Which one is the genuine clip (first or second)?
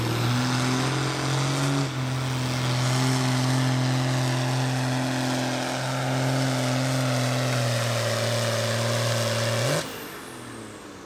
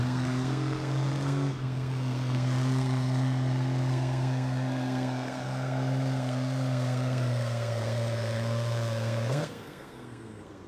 first